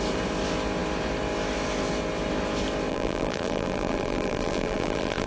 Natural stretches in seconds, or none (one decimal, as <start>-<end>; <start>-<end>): 0.0-2.9